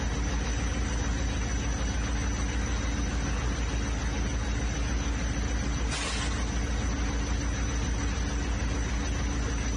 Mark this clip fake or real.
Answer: real